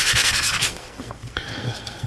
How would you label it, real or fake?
fake